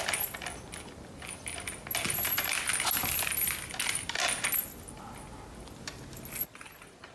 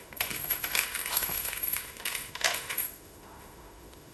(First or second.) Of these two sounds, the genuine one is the first